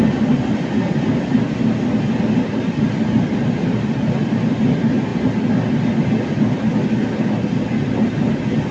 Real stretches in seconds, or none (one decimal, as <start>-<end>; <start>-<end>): 0.0-8.7